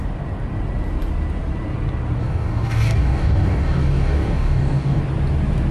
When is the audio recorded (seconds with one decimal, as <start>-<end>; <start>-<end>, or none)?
0.0-2.2; 5.0-5.7